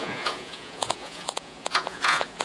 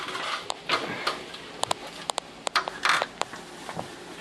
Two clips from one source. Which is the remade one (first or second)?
first